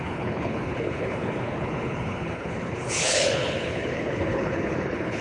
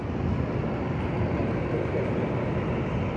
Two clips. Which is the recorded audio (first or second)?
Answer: second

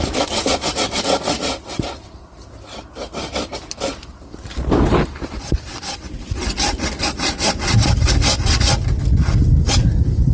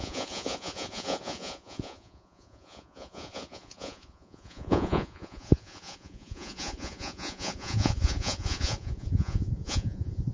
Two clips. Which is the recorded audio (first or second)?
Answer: first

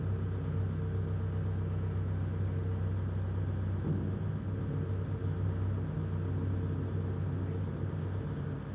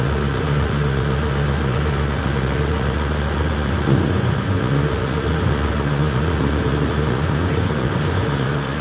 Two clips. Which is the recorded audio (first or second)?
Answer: first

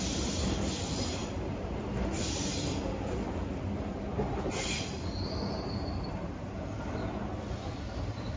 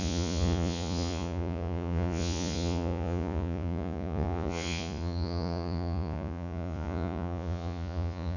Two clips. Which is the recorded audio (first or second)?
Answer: first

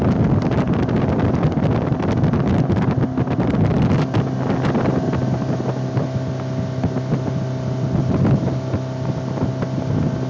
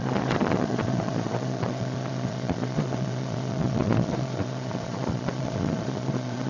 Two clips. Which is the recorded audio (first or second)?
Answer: first